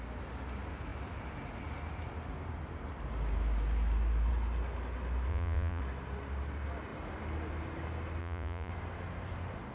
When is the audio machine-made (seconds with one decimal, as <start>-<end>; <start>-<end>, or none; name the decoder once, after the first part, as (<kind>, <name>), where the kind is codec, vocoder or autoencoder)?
5.3-5.8 (vocoder, Vocos); 8.2-8.7